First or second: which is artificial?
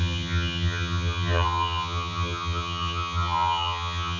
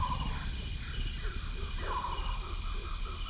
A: first